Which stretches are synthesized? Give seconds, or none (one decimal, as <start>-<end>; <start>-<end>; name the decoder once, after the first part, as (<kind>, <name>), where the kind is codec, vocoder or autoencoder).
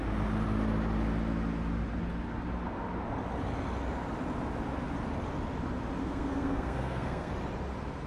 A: 6.0-7.3 (codec, SNAC)